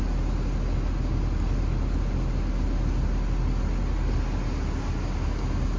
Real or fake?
real